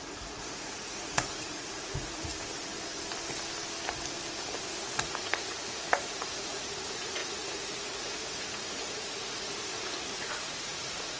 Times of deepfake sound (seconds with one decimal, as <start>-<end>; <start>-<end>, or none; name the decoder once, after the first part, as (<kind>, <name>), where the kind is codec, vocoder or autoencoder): 0.0-2.3 (vocoder, Vocos); 4.7-11.2